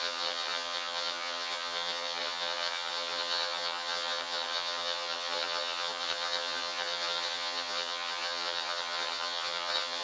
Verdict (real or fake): fake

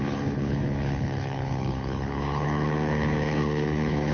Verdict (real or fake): fake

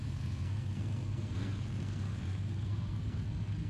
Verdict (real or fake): fake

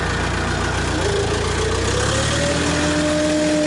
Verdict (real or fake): real